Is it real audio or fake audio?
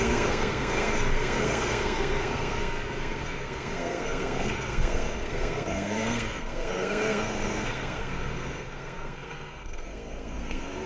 fake